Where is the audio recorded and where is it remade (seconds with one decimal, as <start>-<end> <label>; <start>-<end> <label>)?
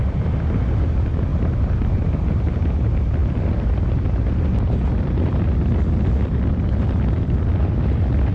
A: 0.0-1.3 recorded; 1.3-2.6 remade; 2.6-8.3 recorded